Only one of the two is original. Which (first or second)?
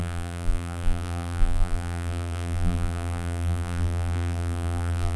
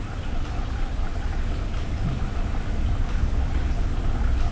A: second